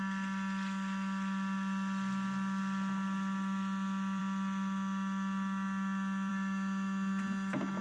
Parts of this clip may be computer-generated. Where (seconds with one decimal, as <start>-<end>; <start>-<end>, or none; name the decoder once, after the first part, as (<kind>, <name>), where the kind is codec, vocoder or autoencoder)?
none